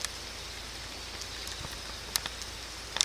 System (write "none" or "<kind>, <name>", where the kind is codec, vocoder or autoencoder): none